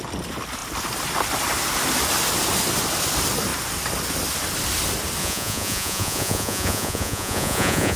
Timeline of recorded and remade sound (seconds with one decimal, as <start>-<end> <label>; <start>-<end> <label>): 0.0-5.2 recorded; 5.2-8.0 remade